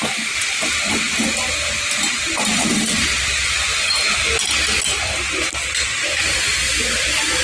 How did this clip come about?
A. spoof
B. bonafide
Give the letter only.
B